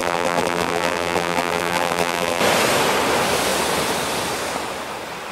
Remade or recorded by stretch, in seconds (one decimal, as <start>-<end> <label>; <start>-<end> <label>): 0.0-2.4 remade; 2.4-5.3 recorded